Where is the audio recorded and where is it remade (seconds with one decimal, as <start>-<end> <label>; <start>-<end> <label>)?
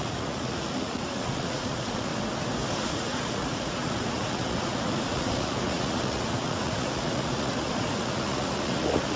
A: 0.0-2.1 remade; 2.1-2.9 recorded; 2.9-9.2 remade